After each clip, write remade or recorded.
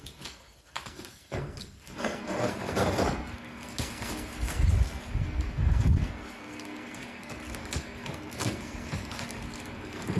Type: remade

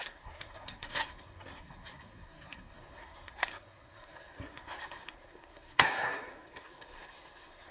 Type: remade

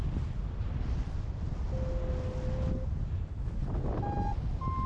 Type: recorded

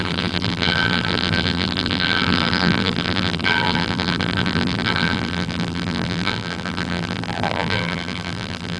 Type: remade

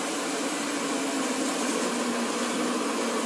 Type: recorded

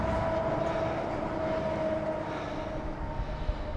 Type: recorded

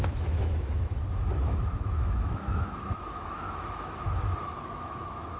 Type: remade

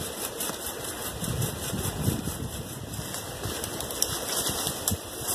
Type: recorded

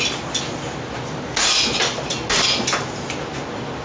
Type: recorded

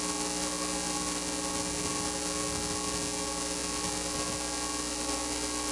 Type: recorded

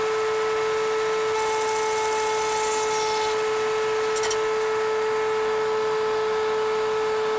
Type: recorded